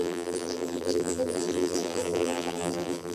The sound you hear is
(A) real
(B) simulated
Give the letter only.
B